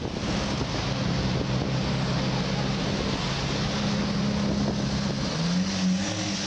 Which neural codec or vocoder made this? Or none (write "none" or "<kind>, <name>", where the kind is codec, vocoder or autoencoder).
none